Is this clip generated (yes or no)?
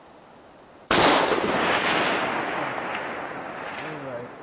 no